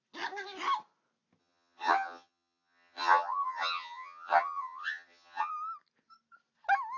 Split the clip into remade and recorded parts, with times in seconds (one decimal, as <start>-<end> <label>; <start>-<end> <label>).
0.0-1.4 recorded; 1.4-5.5 remade; 5.5-7.0 recorded